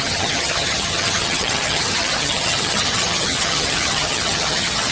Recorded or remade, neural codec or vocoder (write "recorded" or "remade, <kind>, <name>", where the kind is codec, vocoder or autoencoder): remade, vocoder, HiFi-GAN